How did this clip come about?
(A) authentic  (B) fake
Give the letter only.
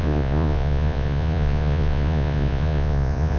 B